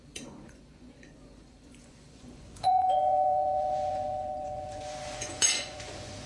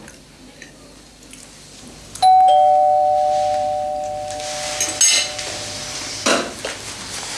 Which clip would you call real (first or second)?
second